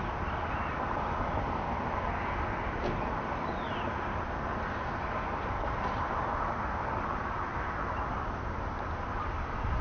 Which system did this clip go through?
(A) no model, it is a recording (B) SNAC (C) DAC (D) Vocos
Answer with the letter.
A